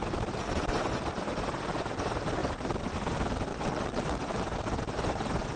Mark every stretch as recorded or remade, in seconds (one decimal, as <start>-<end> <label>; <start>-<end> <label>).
0.0-3.5 recorded; 3.5-4.4 remade; 4.4-5.6 recorded